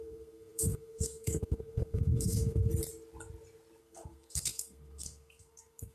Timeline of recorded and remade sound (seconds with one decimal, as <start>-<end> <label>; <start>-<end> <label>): 0.0-2.7 remade; 2.7-3.8 recorded; 3.8-5.9 remade

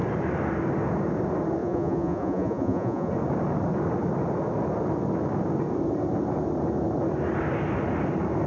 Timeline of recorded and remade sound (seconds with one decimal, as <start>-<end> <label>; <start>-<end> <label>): 0.0-1.6 recorded; 1.6-3.1 remade; 3.1-8.5 recorded

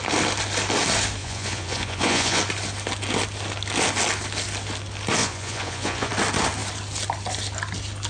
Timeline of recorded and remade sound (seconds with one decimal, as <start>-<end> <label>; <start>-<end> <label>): 0.0-1.2 recorded; 1.2-2.4 remade; 2.4-5.2 recorded; 5.2-6.1 remade; 6.1-8.1 recorded

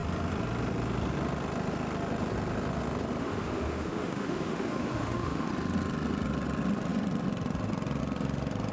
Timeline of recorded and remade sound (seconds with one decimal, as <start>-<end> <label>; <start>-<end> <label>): 0.0-3.2 recorded; 3.2-5.5 remade; 5.5-8.7 recorded

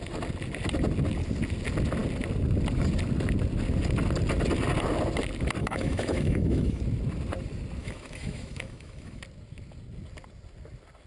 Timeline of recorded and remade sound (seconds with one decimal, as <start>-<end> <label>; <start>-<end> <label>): 0.0-5.6 recorded; 5.6-6.8 remade; 6.8-7.8 recorded; 7.8-9.2 remade; 9.2-11.1 recorded

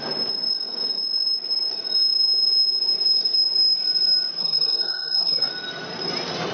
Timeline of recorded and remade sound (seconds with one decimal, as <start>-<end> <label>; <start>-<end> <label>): 0.0-4.4 recorded; 4.4-5.5 remade; 5.5-6.5 recorded